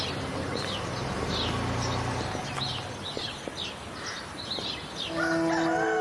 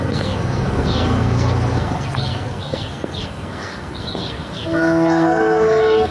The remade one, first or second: second